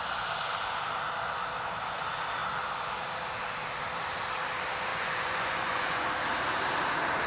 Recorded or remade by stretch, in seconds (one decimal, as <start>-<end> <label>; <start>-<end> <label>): 0.0-4.9 recorded; 4.9-6.0 remade; 6.0-7.3 recorded